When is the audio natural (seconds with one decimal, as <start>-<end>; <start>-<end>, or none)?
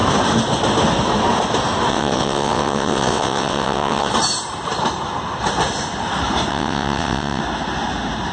0.0-1.9; 4.1-6.5; 7.4-8.3